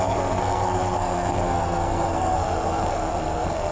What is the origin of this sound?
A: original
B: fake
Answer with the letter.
B